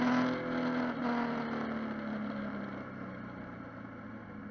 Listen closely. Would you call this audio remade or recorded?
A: recorded